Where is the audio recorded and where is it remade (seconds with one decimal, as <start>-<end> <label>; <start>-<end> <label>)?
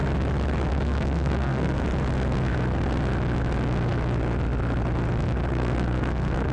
0.0-0.7 recorded; 0.7-1.8 remade; 1.8-5.5 recorded; 5.5-6.5 remade